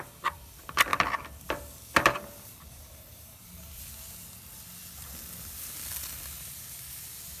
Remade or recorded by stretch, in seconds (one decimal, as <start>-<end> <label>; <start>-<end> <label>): 0.0-0.9 recorded; 0.9-3.8 remade; 3.8-7.4 recorded